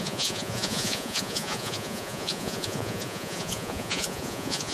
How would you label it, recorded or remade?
remade